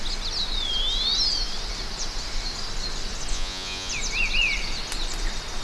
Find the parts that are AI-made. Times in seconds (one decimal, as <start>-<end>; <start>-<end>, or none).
3.3-3.9

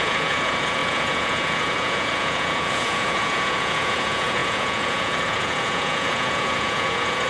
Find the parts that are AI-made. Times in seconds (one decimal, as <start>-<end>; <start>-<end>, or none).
0.0-7.3

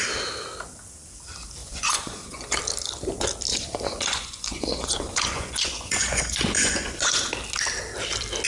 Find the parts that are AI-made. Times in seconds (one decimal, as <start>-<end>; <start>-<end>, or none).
1.6-2.6; 3.5-7.3

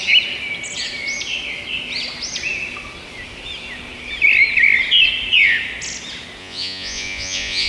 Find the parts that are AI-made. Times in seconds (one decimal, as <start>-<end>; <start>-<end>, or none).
6.4-7.7

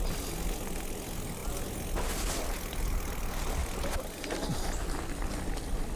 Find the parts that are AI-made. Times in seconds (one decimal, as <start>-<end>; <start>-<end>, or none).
none

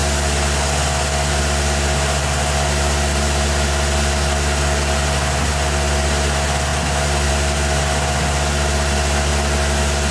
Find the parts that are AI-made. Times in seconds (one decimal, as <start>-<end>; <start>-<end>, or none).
none

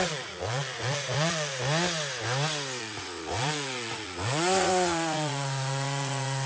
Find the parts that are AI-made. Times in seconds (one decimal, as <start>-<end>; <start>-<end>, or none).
0.0-1.5; 2.8-6.5